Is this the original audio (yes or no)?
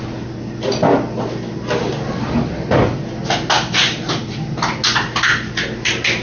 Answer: yes